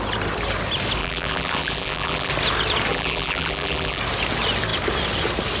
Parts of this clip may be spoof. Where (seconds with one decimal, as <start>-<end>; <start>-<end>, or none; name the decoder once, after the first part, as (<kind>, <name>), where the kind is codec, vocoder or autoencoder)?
1.0-2.3 (vocoder, BigVGAN v2); 2.9-4.0

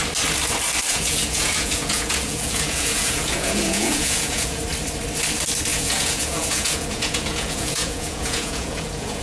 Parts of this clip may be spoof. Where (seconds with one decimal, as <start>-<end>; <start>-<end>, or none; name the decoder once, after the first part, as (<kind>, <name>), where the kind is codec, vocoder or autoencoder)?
0.9-4.6 (vocoder, Vocos); 5.7-9.2

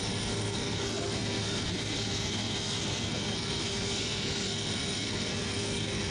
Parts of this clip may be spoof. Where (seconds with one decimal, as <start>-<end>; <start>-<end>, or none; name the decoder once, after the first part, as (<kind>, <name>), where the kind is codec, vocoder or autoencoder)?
0.0-6.1 (codec, SNAC)

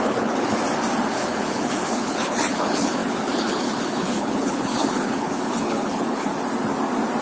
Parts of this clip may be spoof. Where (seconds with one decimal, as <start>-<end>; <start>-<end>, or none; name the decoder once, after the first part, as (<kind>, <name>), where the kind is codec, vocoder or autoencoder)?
0.0-0.6 (codec, HILCodec); 1.1-6.3

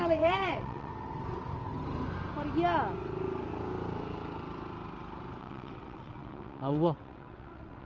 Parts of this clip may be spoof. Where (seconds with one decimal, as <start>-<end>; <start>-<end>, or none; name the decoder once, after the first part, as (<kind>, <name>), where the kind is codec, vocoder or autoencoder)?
0.0-0.9 (vocoder, WaveNeXt); 5.4-7.9

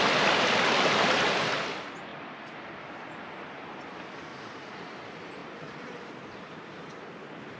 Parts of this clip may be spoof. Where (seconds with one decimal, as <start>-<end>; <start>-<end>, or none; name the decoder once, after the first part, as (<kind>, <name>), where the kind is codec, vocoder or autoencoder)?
4.3-4.9 (vocoder, Vocos)